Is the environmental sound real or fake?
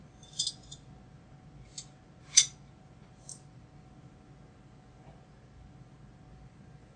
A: real